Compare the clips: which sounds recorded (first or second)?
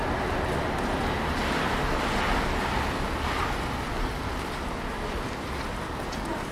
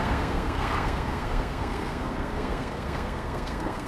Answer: first